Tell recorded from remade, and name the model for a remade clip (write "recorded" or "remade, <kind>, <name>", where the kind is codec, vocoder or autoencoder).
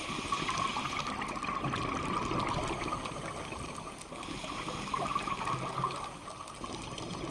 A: recorded